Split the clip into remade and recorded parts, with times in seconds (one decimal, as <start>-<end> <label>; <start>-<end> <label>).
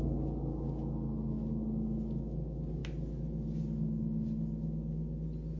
0.0-5.6 recorded